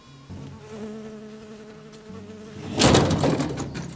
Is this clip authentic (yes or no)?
yes